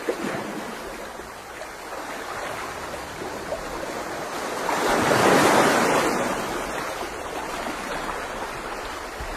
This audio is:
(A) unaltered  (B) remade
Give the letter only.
A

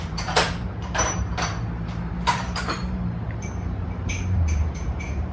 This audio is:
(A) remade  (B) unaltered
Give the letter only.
A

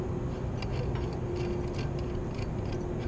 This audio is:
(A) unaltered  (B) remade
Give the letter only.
A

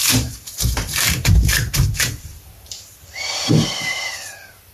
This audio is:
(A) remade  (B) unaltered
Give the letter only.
A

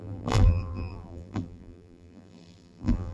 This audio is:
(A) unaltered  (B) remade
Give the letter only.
B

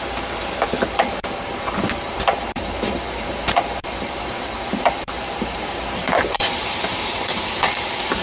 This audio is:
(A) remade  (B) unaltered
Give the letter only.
A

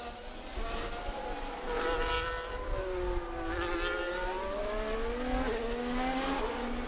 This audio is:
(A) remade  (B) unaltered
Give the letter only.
B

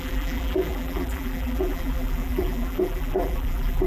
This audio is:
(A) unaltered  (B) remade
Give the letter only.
B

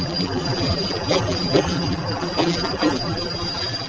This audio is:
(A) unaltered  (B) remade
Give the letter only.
B